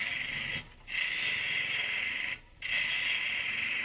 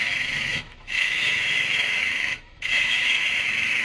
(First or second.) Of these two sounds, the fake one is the second